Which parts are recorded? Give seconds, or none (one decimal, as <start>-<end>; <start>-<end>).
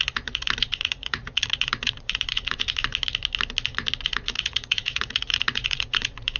2.9-4.0